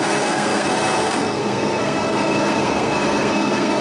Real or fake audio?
fake